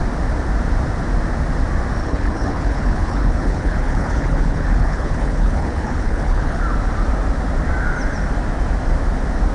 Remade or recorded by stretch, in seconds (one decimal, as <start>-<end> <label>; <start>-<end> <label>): 0.0-2.0 recorded; 2.0-6.6 remade; 6.6-9.5 recorded